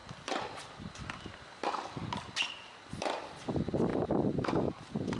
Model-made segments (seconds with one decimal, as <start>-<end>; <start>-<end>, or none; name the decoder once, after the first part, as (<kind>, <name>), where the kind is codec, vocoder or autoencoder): 0.0-3.1 (vocoder, BigVGAN v2); 3.9-4.6